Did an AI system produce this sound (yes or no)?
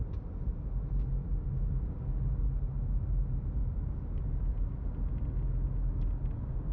no